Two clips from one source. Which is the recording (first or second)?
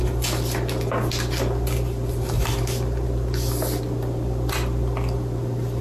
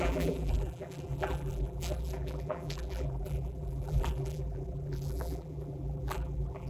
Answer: first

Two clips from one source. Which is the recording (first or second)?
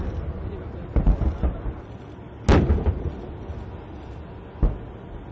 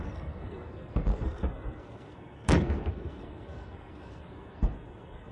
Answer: first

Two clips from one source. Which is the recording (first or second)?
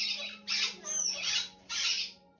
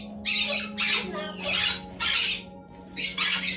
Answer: second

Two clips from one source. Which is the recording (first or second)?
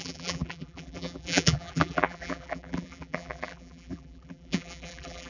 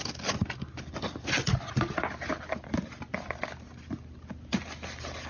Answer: second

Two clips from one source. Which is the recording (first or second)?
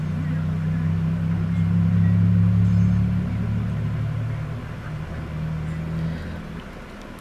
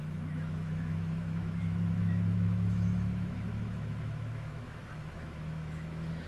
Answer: first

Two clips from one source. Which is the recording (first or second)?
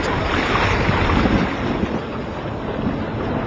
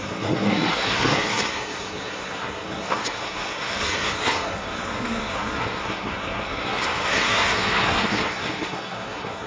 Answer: first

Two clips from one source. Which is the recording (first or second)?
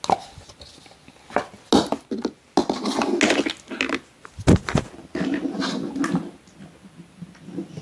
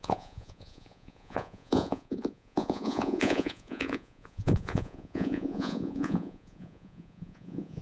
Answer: first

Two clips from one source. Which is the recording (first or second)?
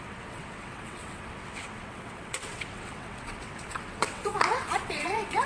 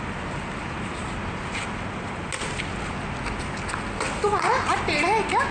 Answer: second